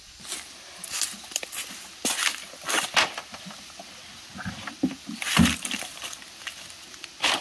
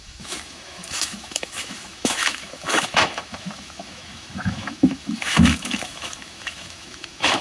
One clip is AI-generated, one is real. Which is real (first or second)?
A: first